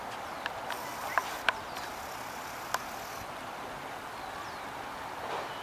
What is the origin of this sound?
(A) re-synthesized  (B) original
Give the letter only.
B